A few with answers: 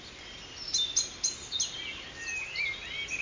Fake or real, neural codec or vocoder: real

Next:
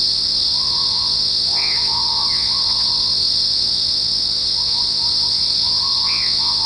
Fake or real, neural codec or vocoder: fake, vocoder, WaveNeXt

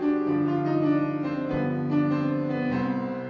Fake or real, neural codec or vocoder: real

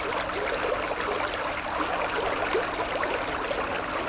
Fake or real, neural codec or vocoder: real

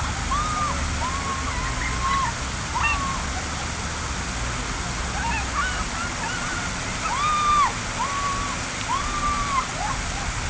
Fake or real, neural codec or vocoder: real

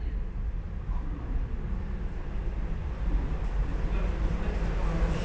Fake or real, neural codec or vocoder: real